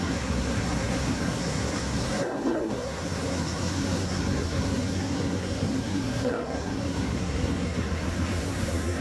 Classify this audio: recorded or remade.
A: remade